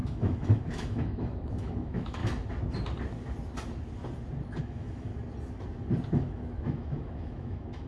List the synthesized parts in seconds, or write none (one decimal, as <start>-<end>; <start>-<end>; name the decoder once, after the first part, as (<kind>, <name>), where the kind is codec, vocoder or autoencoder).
0.0-2.2 (autoencoder, DAC-VAE); 4.6-5.1; 6.1-7.9